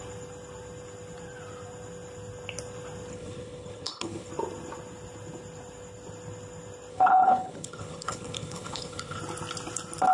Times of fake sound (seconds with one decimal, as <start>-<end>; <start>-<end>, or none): 3.1-4.3; 6.9-9.2